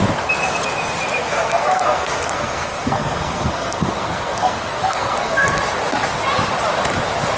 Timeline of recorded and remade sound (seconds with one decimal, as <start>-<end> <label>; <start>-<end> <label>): 0.0-1.2 recorded; 1.2-5.6 remade; 5.6-7.4 recorded